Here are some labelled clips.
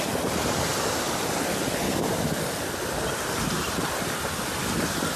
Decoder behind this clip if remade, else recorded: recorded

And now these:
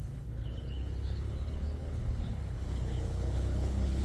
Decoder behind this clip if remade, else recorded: remade, codec, HILCodec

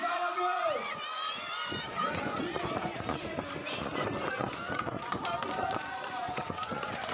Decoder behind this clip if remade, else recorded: remade, vocoder, Vocos